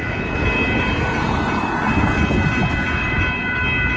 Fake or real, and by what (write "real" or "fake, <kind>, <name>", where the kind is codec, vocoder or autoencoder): fake, vocoder, BigVGAN v2